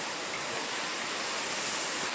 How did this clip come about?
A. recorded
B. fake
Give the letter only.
A